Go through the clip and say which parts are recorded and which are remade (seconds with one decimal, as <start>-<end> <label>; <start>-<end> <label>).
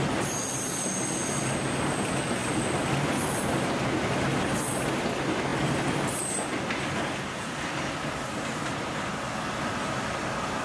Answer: 0.0-10.6 recorded